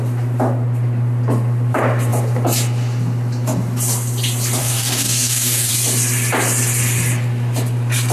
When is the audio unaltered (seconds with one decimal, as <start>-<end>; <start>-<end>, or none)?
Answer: 0.0-4.6; 5.7-8.1